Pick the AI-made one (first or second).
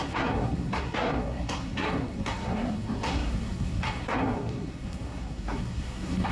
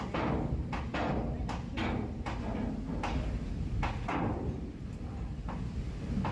first